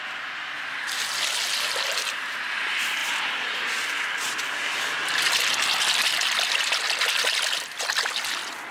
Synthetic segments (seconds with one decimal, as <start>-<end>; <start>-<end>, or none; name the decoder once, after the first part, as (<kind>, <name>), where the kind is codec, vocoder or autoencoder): none